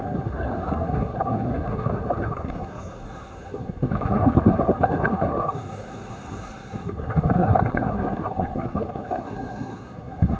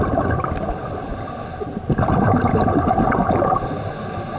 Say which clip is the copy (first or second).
first